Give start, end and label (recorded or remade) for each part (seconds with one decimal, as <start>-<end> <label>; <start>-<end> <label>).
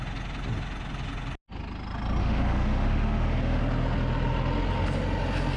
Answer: 0.0-2.2 recorded; 2.2-3.6 remade; 3.6-5.6 recorded